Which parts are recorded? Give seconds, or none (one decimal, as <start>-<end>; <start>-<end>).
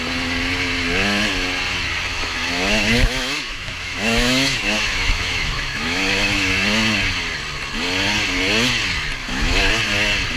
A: 0.0-2.1; 6.5-9.2; 9.7-10.4